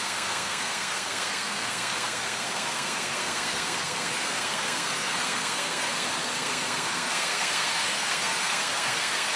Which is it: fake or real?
fake